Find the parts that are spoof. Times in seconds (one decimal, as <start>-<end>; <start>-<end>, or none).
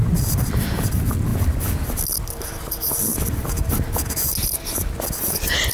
none